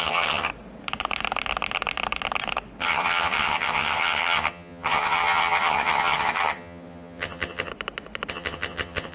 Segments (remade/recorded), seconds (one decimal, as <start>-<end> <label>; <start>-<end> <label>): 0.0-0.5 remade; 0.5-2.8 recorded; 2.8-7.7 remade; 7.7-8.3 recorded; 8.3-9.1 remade